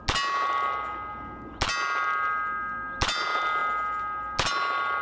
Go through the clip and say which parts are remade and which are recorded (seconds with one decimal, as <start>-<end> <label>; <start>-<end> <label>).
0.0-5.0 recorded